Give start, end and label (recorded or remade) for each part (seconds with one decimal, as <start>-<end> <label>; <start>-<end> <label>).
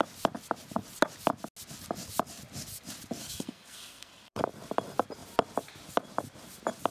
0.0-3.2 recorded; 3.2-4.4 remade; 4.4-6.9 recorded